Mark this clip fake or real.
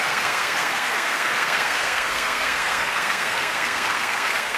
fake